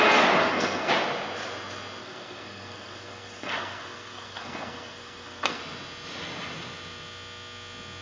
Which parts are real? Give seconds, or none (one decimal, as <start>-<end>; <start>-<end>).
0.0-0.4; 0.9-2.0; 5.6-8.0